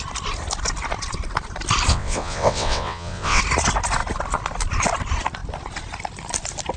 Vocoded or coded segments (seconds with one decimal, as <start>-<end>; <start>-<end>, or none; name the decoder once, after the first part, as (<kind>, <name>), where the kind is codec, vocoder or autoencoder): 1.9-3.4 (vocoder, WaveNeXt)